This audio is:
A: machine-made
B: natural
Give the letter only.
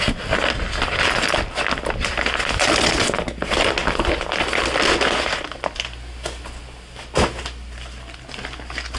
B